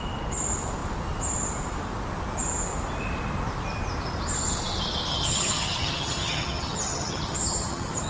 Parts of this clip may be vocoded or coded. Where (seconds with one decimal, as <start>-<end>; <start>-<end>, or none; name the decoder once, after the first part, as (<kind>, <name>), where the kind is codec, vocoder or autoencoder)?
5.1-8.1 (vocoder, HiFi-GAN)